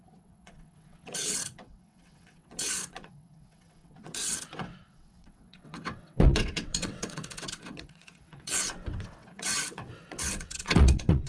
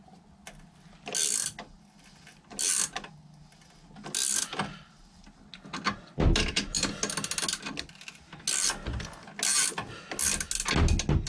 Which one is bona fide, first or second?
second